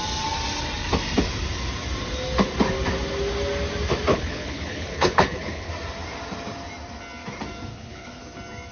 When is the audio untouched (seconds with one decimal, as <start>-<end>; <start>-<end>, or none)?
0.0-4.1; 5.7-7.7; 8.2-8.7